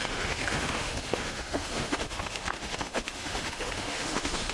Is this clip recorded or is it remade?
remade